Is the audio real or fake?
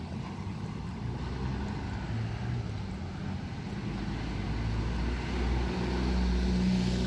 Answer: real